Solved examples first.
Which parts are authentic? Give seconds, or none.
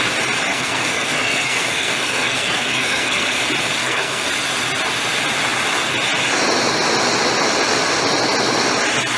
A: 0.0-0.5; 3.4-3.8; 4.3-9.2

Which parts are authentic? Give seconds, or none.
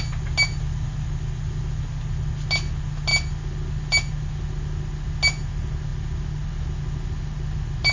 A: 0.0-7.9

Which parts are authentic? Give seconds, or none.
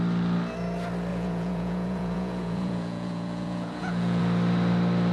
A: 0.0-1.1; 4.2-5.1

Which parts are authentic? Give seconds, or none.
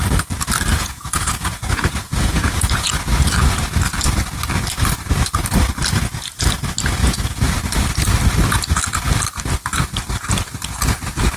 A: 0.0-0.7; 2.9-7.0; 7.5-11.4